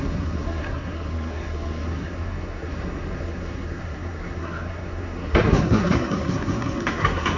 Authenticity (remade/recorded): remade